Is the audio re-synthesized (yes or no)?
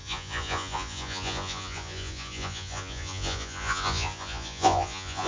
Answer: yes